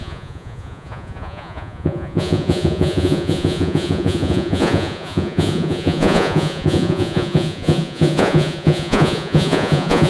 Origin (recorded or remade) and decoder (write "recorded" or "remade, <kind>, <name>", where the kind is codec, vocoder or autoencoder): remade, vocoder, Vocos